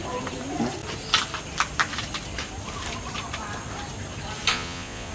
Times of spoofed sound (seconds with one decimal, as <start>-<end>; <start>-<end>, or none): 4.5-5.1